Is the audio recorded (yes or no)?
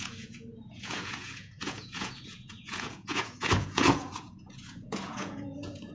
no